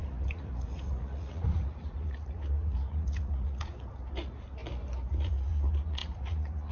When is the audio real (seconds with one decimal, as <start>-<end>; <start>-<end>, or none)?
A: 4.6-5.1